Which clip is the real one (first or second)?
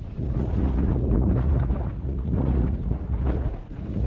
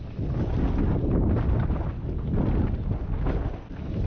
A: second